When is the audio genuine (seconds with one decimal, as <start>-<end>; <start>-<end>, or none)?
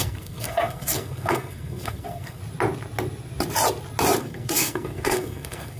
2.4-4.2